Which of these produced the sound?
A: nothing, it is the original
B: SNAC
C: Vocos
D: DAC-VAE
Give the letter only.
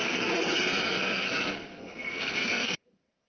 B